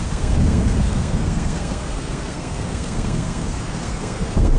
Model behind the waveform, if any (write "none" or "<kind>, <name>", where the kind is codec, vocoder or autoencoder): codec, SNAC